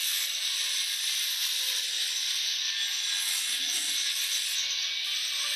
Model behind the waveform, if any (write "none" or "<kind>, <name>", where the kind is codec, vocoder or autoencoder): none